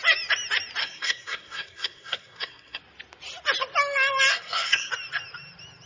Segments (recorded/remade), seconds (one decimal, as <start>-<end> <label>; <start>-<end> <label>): 0.0-0.8 recorded; 0.8-2.8 remade; 2.8-4.3 recorded; 4.3-4.9 remade; 4.9-5.9 recorded